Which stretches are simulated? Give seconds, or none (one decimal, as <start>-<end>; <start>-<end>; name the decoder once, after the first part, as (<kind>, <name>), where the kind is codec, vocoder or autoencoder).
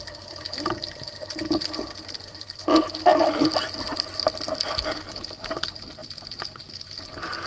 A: none